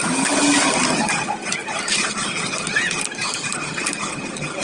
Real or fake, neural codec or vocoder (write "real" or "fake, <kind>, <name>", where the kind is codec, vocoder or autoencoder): real